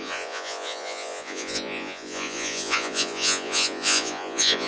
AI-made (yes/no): yes